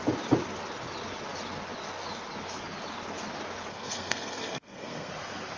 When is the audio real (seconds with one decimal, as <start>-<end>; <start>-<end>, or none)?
0.0-3.7; 5.1-5.6